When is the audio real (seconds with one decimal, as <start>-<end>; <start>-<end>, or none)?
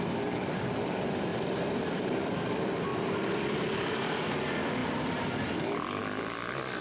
0.0-1.3; 2.5-2.9; 4.3-6.8